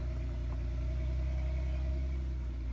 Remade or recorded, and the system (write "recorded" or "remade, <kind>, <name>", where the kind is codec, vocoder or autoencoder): recorded